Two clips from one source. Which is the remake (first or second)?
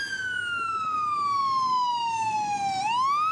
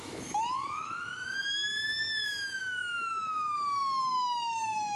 second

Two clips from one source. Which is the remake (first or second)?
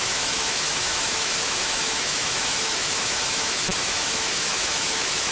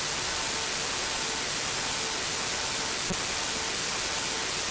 first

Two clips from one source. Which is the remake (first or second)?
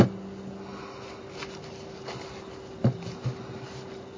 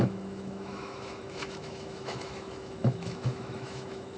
second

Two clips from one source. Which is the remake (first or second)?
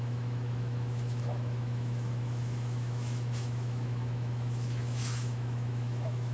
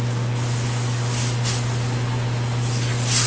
first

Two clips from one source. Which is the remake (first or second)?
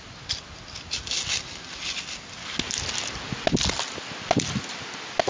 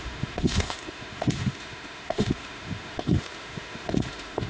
second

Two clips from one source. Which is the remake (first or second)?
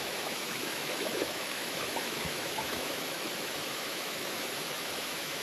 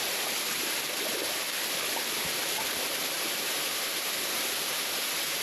first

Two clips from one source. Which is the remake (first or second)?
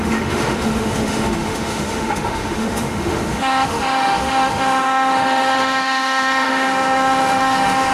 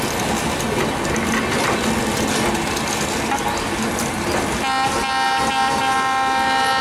first